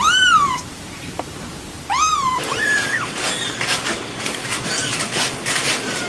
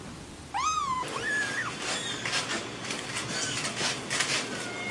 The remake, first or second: first